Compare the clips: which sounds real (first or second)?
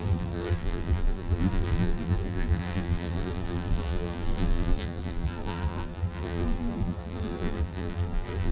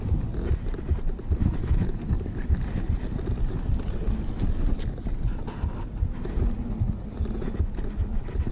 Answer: second